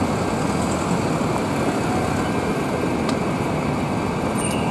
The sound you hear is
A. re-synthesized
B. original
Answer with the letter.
B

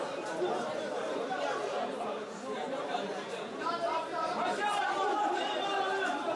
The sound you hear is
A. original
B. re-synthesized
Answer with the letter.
B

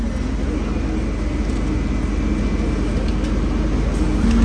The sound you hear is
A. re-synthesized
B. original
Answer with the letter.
B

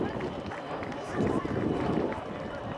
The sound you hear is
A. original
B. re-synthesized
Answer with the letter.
A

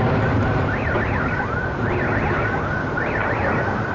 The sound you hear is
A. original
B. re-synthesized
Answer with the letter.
B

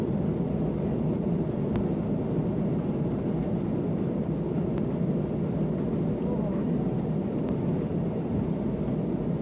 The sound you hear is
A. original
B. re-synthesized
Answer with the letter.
A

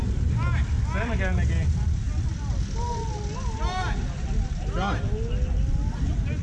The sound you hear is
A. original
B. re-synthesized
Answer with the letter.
A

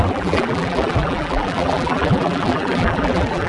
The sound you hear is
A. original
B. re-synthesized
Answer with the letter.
B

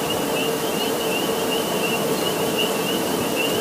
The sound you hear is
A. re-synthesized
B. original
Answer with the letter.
B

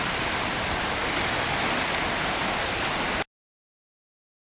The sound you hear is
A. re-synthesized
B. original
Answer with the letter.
B